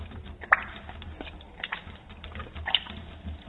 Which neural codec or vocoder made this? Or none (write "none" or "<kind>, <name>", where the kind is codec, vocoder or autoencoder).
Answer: none